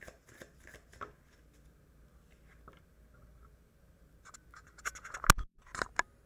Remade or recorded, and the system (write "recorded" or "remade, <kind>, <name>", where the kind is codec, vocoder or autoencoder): recorded